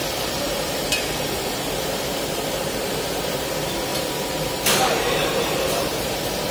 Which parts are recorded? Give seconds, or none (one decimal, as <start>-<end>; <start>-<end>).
3.0-3.9